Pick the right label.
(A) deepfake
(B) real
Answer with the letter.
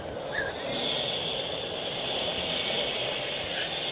B